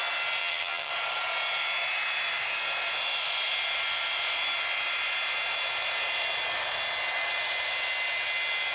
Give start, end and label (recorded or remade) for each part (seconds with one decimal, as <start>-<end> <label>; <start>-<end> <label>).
0.0-0.4 recorded; 0.4-0.9 remade; 0.9-8.7 recorded